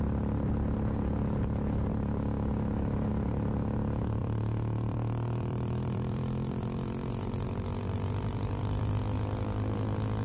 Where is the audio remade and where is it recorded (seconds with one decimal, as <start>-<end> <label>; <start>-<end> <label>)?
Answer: 0.0-4.2 recorded; 4.2-9.0 remade; 9.0-10.2 recorded